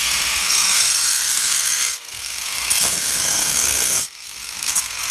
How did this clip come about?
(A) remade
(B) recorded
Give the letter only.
A